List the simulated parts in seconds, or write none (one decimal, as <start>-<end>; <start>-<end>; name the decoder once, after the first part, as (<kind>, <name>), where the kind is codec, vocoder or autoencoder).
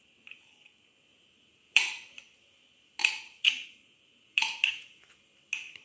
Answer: 1.1-2.2 (vocoder, Vocos); 3.0-5.0